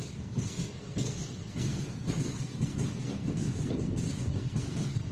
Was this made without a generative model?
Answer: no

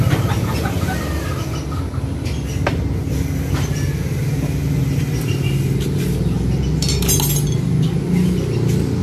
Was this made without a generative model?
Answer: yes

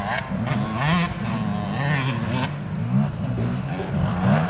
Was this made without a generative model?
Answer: yes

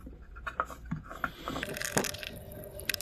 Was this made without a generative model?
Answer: yes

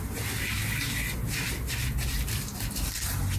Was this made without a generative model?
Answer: yes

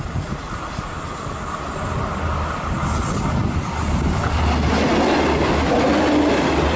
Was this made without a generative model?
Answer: yes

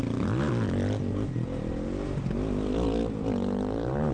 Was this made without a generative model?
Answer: yes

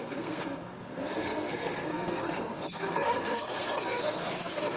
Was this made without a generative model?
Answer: no